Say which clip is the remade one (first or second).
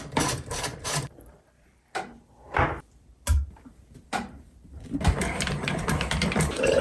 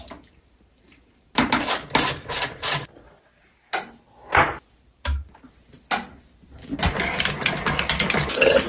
first